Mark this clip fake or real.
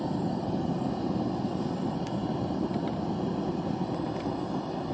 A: real